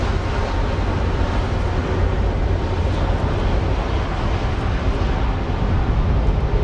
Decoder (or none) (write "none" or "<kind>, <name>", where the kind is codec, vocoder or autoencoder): none